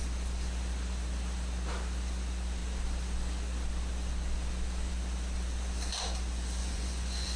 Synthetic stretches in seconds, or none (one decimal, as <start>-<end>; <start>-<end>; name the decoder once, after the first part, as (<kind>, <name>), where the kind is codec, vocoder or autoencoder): 6.6-7.4 (vocoder, Vocos)